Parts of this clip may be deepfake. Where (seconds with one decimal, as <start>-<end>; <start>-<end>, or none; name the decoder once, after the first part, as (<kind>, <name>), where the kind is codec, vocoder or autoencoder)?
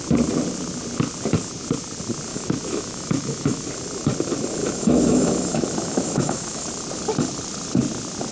2.3-3.7 (autoencoder, DAC-VAE); 4.6-6.7